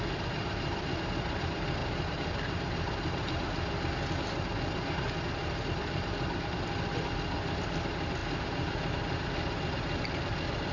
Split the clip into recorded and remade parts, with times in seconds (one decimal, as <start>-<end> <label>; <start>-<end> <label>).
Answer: 0.0-1.8 remade; 1.8-6.4 recorded; 6.4-8.2 remade; 8.2-10.0 recorded; 10.0-10.7 remade